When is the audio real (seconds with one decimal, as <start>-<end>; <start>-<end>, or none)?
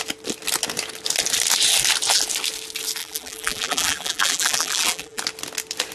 0.0-3.0; 5.2-5.9